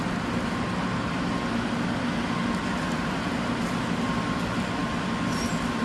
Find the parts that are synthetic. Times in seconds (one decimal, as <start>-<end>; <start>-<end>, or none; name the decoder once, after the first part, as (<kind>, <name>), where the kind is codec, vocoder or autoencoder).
none